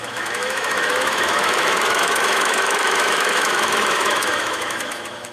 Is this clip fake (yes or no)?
yes